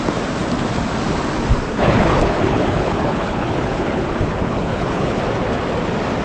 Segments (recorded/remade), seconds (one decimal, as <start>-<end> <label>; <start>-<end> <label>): 0.0-1.7 recorded; 1.7-5.2 remade; 5.2-6.2 recorded